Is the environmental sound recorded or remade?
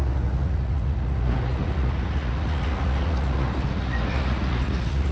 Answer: remade